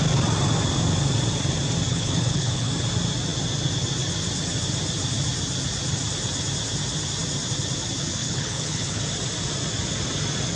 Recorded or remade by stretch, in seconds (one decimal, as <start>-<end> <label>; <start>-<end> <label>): 0.0-1.9 recorded; 1.9-2.7 remade; 2.7-8.2 recorded; 8.2-9.0 remade; 9.0-10.6 recorded